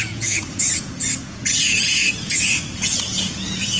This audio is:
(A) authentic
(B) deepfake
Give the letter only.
B